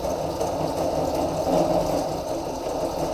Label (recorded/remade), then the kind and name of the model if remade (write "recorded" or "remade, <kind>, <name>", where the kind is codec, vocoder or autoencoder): recorded